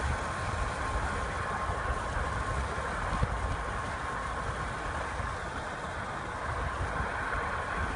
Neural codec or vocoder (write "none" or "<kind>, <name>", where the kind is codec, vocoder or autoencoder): none